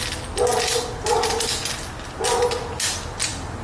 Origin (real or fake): real